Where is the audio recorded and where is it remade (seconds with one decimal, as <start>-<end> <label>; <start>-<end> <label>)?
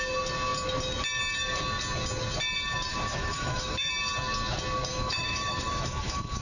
0.0-2.9 recorded; 2.9-3.9 remade; 3.9-4.9 recorded; 4.9-6.4 remade